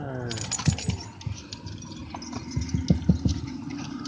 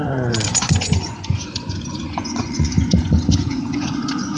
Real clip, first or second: first